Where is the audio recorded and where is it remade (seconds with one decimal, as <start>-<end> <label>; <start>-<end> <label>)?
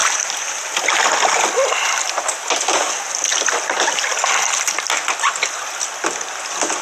0.0-6.8 recorded